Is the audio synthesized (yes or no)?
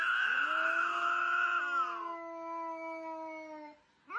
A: no